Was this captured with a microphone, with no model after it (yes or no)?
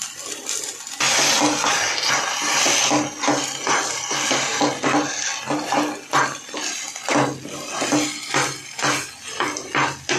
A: yes